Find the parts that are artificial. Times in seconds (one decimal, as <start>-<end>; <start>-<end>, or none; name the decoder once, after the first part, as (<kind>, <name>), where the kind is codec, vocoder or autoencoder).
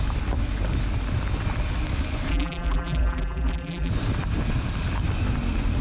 2.3-3.9 (vocoder, BigVGAN v2)